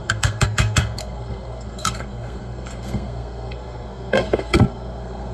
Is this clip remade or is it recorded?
remade